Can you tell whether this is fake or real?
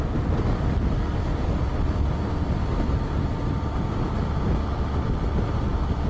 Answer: real